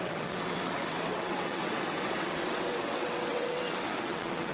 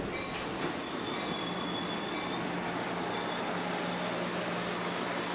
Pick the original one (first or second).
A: second